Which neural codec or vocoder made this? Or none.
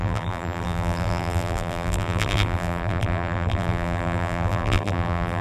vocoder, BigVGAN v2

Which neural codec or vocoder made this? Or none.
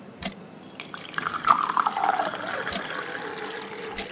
none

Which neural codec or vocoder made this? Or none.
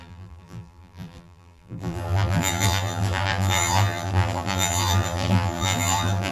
vocoder, BigVGAN v2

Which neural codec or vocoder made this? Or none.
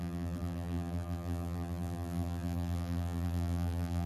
vocoder, BigVGAN v2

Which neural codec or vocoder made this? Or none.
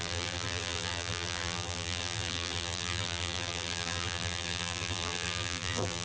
vocoder, BigVGAN v2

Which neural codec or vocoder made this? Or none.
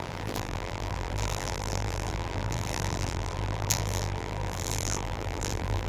vocoder, BigVGAN v2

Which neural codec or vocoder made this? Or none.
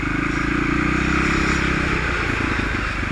none